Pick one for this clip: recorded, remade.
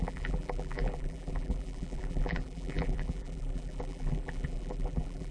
remade